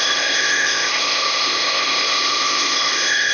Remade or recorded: remade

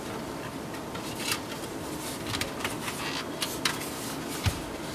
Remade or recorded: recorded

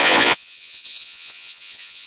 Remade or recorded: remade